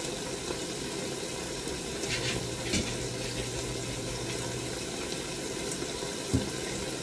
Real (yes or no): yes